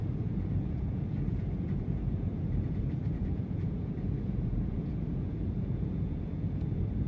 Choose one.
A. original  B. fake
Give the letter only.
B